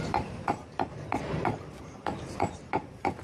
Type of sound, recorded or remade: remade